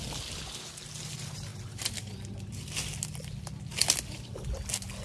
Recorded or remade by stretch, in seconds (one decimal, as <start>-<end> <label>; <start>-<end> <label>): 0.0-5.0 recorded